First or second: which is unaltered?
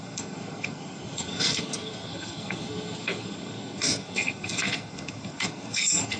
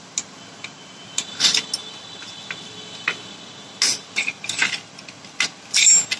second